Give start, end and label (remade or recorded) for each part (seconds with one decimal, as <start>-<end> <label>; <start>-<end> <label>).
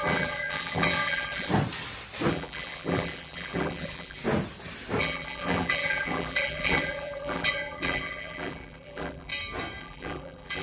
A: 0.0-1.5 remade; 1.5-2.3 recorded; 2.3-4.2 remade; 4.2-5.0 recorded; 5.0-9.3 remade; 9.3-9.8 recorded; 9.8-10.6 remade